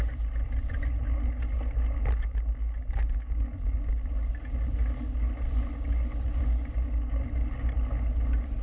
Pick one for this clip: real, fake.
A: real